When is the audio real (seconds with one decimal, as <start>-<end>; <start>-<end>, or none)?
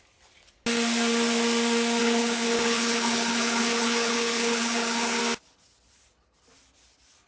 0.0-2.0; 5.2-7.3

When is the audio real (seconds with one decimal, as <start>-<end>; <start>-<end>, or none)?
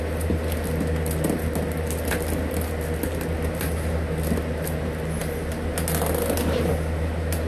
0.0-7.5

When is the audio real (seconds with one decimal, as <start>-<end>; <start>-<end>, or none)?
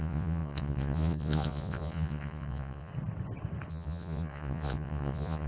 2.9-3.7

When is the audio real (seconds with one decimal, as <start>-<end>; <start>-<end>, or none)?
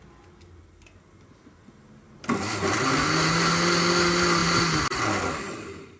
0.0-6.0